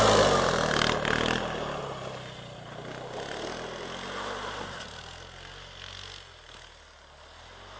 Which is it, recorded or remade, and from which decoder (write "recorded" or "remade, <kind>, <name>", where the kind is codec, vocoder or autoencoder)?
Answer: recorded